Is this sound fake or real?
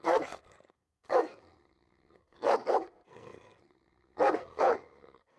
fake